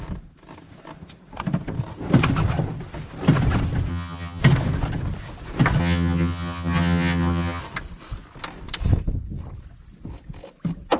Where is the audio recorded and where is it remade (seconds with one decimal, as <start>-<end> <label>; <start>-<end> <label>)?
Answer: 0.0-3.9 recorded; 3.9-4.4 remade; 4.4-5.8 recorded; 5.8-7.6 remade; 7.6-11.0 recorded